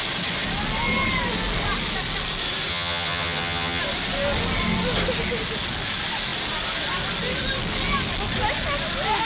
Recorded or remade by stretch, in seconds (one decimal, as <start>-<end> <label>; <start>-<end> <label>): 0.0-2.7 recorded; 2.7-3.8 remade; 3.8-9.2 recorded